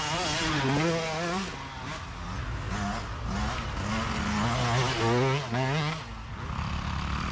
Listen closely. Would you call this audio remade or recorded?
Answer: recorded